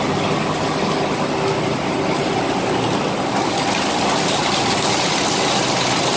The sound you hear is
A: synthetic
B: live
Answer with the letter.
B